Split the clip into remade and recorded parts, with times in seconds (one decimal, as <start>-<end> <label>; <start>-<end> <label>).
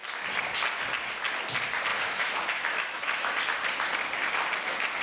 0.0-1.9 recorded; 1.9-3.4 remade; 3.4-5.0 recorded